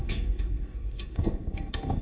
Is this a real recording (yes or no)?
no